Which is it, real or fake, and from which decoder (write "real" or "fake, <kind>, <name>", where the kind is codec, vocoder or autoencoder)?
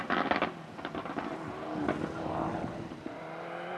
real